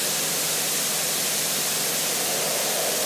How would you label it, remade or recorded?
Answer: recorded